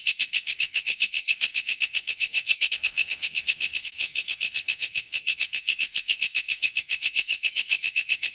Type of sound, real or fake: fake